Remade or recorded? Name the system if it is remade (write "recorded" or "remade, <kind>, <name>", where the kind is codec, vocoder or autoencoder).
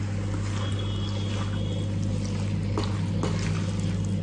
recorded